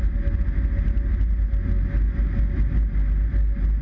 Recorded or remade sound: recorded